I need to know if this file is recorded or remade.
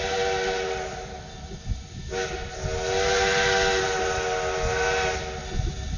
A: recorded